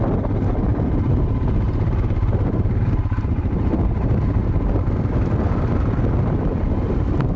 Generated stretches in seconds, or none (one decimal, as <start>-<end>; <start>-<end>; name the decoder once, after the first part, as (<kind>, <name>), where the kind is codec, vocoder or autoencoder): 0.7-5.1 (vocoder, BigVGAN v2)